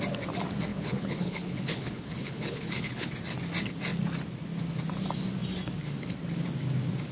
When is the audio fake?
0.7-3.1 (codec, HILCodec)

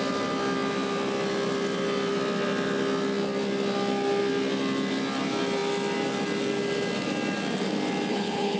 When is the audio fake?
8.1-8.6 (codec, HILCodec)

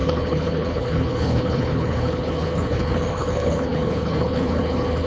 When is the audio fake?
0.0-5.1 (codec, HILCodec)

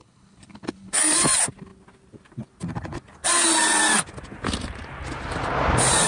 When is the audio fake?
0.0-1.0 (codec, HILCodec)

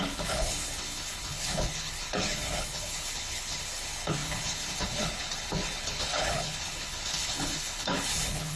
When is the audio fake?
0.0-8.6 (codec, HILCodec)

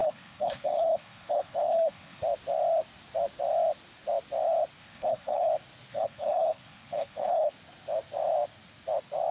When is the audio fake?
0.0-2.2 (codec, HILCodec); 4.8-5.5; 5.9-7.5

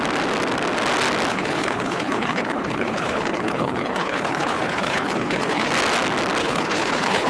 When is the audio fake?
1.3-5.7 (codec, HILCodec); 6.4-7.3

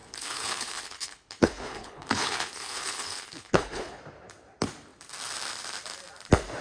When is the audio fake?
0.0-4.0 (codec, HILCodec)